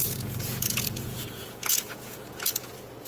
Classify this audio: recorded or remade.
remade